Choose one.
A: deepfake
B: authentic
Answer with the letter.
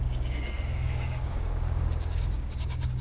A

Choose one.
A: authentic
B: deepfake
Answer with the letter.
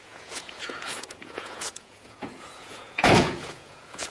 B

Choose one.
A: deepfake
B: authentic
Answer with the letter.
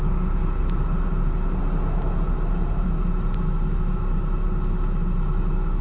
B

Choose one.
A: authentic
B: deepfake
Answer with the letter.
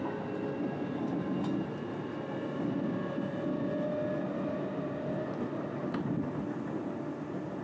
A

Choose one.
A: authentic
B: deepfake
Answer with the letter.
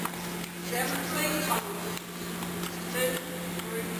A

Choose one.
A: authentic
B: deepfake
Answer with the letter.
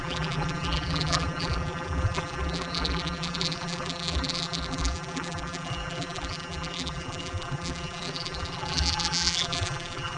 B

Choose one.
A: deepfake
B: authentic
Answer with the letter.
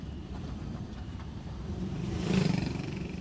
A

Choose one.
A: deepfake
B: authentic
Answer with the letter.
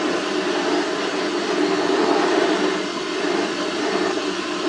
B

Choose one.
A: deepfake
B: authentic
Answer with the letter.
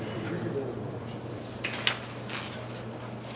B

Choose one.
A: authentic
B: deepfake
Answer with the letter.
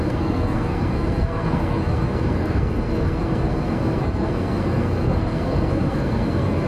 B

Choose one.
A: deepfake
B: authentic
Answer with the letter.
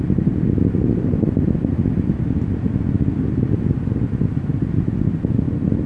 B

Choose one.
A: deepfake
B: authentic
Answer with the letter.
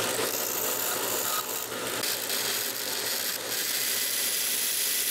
B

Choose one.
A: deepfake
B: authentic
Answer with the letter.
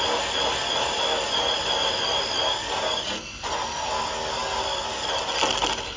B